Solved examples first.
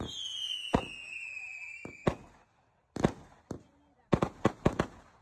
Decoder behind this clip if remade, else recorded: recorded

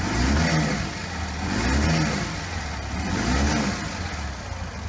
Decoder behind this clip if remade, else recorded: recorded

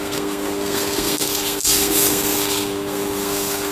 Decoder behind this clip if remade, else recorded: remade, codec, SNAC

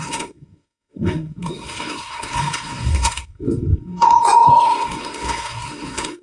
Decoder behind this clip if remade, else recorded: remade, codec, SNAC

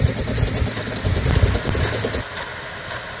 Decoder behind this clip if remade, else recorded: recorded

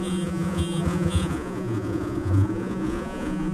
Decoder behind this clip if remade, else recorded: remade, vocoder, Vocos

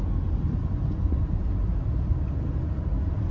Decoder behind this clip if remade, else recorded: remade, vocoder, BigVGAN v2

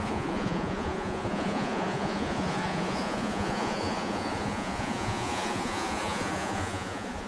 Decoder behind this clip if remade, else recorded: remade, vocoder, Vocos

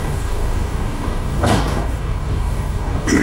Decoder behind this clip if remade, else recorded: remade, codec, DAC